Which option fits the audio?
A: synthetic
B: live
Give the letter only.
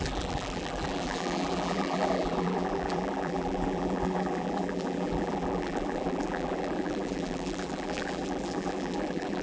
A